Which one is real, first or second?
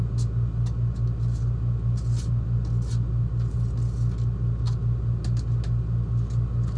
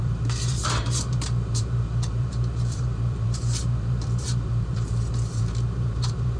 first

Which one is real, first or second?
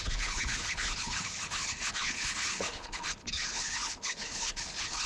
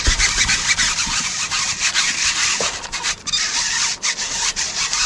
second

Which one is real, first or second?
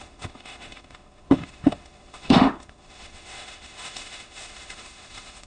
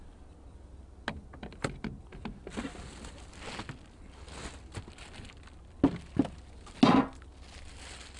second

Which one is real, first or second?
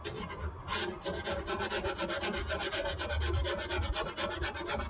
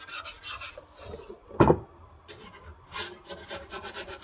first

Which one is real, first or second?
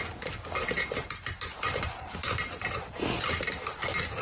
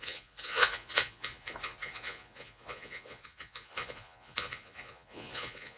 first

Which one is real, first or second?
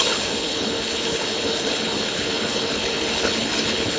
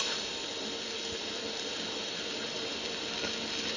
second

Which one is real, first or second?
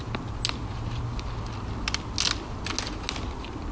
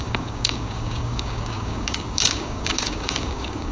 first